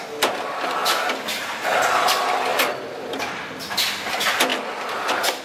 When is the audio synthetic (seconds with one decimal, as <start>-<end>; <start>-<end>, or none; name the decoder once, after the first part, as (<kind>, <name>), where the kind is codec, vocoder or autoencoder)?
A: 2.5-3.3 (vocoder, BigVGAN v2)